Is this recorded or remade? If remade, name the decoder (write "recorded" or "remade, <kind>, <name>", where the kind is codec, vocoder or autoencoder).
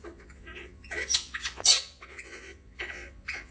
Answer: remade, vocoder, Vocos